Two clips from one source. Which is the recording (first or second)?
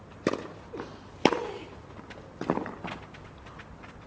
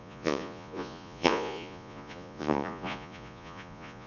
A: first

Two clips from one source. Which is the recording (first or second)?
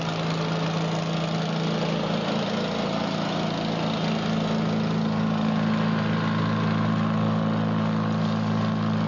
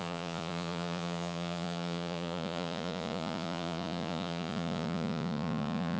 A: first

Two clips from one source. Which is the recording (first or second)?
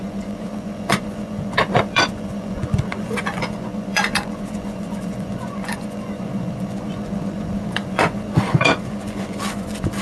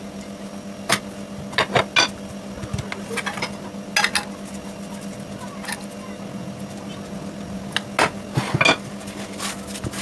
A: second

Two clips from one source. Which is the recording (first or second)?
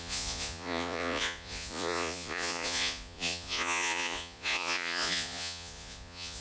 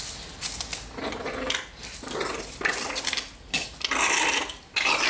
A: second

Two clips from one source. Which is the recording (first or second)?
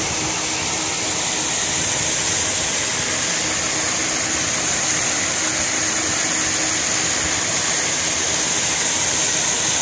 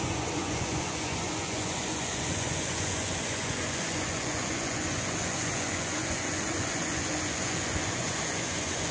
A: first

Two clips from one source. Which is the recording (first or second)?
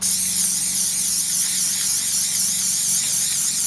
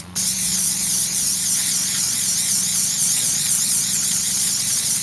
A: first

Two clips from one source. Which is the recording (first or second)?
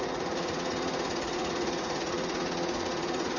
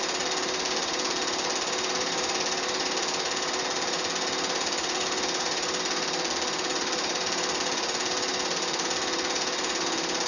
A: second